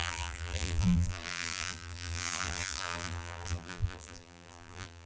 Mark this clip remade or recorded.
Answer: remade